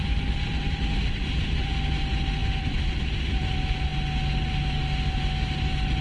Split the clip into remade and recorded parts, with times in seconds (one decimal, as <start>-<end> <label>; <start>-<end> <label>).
0.0-0.8 remade; 0.8-2.4 recorded; 2.4-3.0 remade; 3.0-6.0 recorded